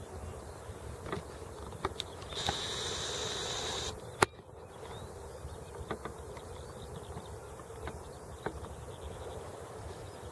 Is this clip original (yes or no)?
yes